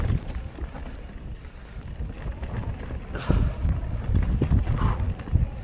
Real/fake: real